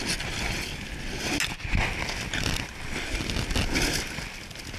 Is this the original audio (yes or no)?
yes